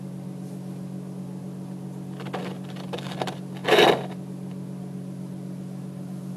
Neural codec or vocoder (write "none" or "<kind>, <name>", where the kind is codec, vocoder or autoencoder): none